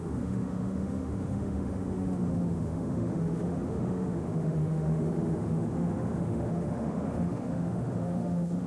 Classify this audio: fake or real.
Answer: fake